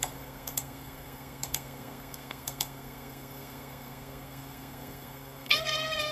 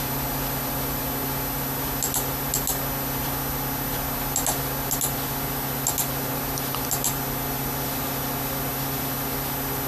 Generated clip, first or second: first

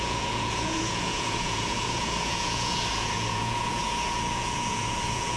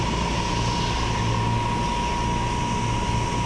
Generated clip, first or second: first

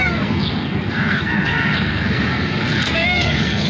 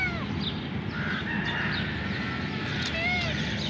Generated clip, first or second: first